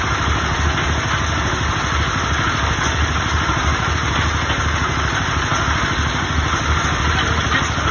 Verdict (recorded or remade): recorded